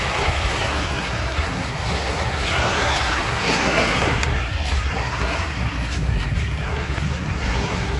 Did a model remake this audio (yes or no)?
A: yes